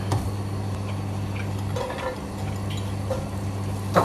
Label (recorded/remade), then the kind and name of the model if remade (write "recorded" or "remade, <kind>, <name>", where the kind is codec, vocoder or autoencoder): recorded